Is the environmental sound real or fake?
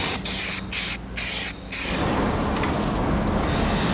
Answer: real